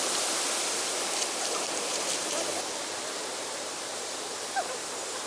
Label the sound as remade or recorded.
remade